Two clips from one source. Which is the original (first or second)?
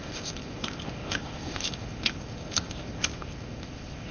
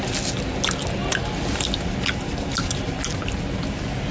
second